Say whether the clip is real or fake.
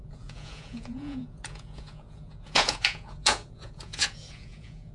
fake